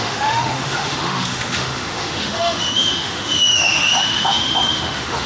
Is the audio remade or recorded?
remade